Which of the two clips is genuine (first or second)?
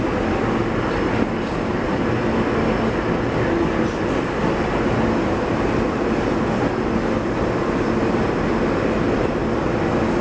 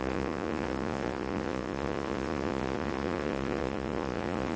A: first